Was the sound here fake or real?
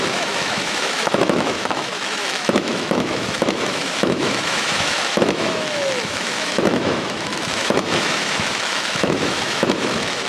fake